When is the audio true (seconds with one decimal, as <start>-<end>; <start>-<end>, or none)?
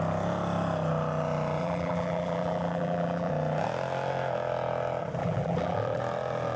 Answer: 0.0-1.6; 3.3-5.2; 6.0-6.6